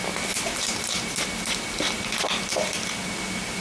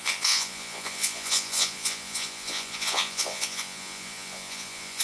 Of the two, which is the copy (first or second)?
second